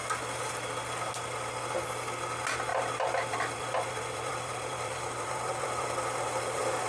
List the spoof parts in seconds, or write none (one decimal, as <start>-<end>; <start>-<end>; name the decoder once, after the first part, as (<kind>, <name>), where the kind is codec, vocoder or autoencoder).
2.7-6.9 (vocoder, BigVGAN v2)